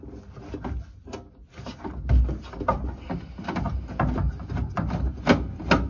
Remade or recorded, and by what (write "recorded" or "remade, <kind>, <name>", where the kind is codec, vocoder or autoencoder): recorded